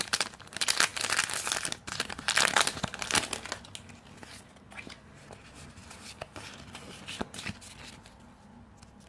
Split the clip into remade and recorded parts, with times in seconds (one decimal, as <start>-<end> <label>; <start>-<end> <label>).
0.0-5.8 recorded; 5.8-8.0 remade; 8.0-9.1 recorded

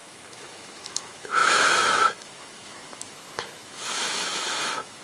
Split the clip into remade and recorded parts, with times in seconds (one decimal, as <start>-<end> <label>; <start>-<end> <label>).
0.0-5.0 remade